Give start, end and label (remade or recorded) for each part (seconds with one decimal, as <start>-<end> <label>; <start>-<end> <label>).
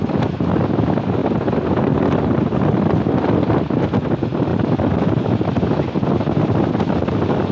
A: 0.0-7.5 recorded